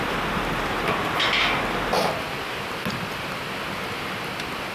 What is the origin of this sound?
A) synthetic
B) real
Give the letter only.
B